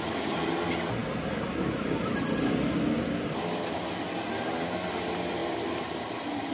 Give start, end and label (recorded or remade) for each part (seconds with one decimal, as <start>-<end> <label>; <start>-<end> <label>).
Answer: 0.0-6.5 recorded